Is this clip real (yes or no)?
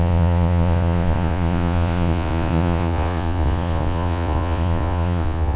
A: no